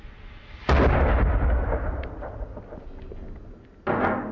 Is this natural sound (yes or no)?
yes